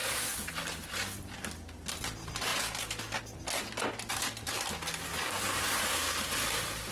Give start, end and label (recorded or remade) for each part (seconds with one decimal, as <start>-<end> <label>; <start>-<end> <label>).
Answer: 0.0-0.5 remade; 0.5-5.1 recorded; 5.1-5.9 remade; 5.9-6.9 recorded